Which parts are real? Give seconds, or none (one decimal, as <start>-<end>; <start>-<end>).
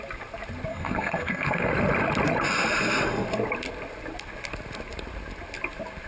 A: 0.0-0.7; 1.7-6.1